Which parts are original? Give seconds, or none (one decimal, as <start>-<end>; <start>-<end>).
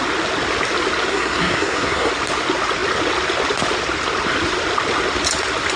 0.0-1.1; 2.1-5.8